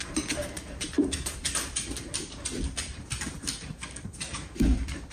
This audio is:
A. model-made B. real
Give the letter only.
B